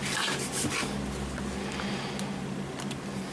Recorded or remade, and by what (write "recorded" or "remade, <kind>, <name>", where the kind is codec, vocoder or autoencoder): recorded